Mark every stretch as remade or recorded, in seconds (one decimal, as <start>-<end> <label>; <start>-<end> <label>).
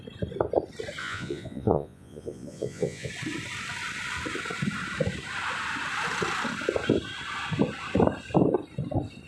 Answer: 0.0-1.0 recorded; 1.0-3.1 remade; 3.1-9.3 recorded